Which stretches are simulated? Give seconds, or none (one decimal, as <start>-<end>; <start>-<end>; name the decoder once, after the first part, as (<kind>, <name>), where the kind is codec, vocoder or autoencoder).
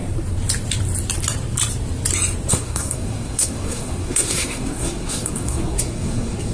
2.5-6.5 (codec, SNAC)